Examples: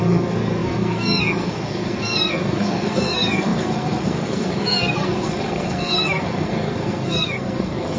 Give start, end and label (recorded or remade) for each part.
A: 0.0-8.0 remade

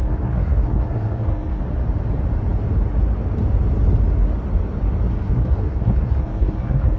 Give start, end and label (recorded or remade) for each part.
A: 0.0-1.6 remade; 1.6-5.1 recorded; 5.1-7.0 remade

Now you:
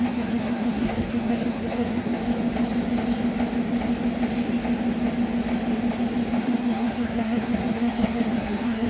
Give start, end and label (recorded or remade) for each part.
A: 0.0-2.2 remade; 2.2-6.4 recorded; 6.4-8.9 remade